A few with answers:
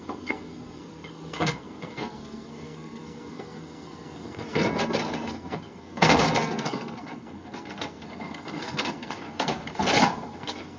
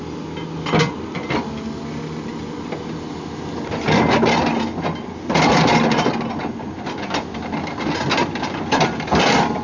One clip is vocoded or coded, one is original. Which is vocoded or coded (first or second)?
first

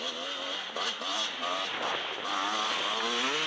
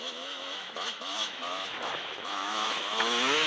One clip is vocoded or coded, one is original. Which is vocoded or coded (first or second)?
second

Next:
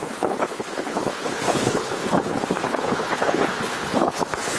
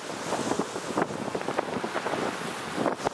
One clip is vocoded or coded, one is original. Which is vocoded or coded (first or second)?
first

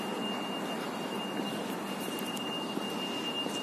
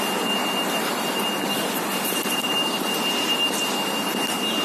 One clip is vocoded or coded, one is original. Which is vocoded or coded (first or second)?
second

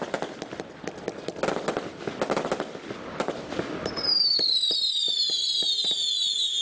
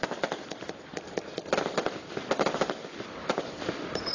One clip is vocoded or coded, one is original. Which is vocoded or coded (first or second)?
second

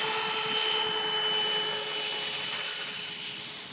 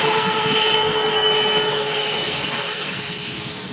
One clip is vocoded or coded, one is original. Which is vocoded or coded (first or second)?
second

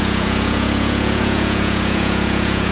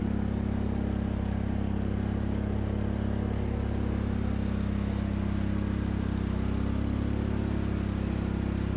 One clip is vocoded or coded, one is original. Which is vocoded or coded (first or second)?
first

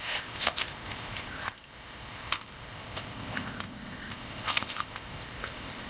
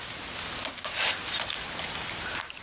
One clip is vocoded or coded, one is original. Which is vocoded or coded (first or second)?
first